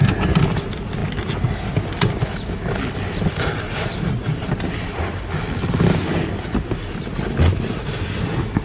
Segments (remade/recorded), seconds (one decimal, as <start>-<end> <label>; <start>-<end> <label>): 0.0-8.6 recorded